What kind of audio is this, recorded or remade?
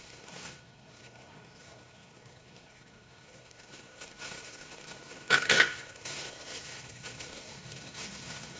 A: remade